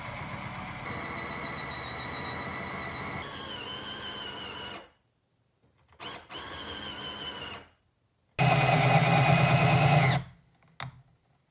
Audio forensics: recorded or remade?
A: recorded